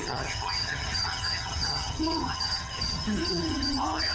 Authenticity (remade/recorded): remade